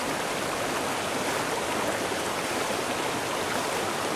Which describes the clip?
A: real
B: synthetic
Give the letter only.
A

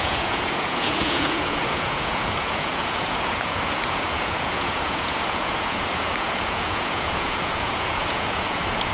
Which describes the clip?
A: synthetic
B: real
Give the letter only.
A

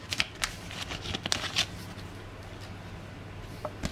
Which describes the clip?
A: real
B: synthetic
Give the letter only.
A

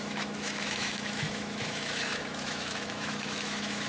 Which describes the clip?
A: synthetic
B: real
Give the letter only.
A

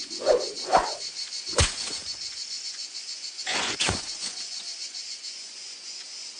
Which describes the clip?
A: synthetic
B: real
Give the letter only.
A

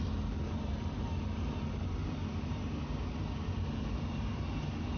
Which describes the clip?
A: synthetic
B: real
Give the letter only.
B